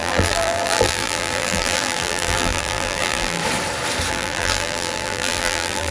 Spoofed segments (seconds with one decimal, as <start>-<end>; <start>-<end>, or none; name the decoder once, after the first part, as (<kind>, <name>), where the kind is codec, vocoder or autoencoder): 0.0-3.4 (vocoder, BigVGAN v2); 4.1-5.9